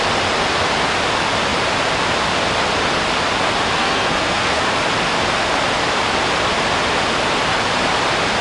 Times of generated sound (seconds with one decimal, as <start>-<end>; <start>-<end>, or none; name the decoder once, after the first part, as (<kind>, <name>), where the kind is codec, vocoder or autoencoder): 3.8-4.6 (codec, SNAC)